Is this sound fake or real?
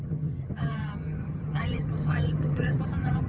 fake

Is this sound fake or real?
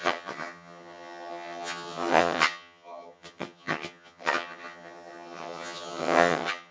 fake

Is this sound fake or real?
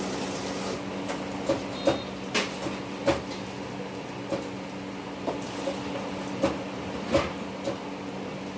real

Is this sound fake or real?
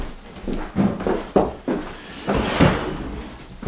real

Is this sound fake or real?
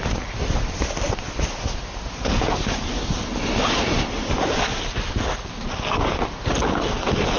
real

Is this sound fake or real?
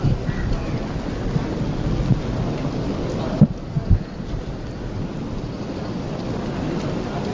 real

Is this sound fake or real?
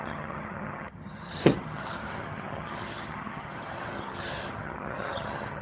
fake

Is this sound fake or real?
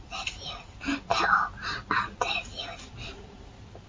real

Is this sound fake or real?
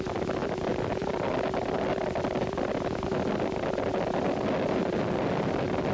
real